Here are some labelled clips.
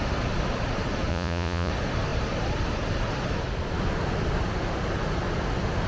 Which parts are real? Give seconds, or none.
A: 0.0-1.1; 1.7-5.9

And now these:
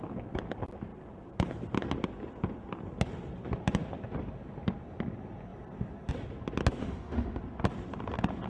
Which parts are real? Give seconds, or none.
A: 0.0-6.8; 7.4-8.5

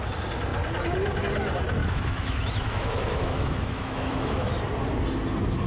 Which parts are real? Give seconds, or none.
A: 0.0-1.8; 4.6-5.7

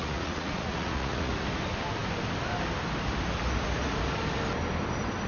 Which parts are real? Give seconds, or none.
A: 1.3-5.3

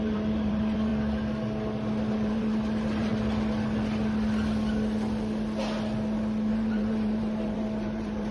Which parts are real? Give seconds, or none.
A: 0.9-2.1; 3.1-6.5